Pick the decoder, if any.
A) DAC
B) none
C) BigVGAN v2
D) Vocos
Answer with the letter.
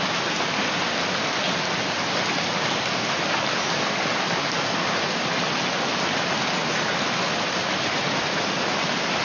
B